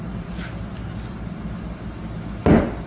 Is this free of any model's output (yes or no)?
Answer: yes